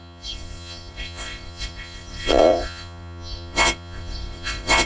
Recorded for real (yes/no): no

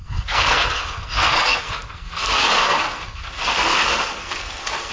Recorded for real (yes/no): no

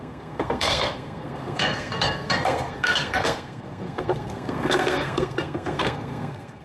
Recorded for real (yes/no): no